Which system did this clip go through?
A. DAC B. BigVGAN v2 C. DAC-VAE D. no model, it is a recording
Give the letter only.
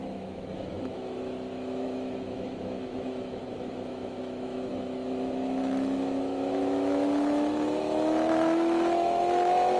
C